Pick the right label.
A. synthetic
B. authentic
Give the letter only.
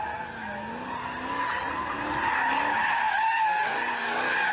B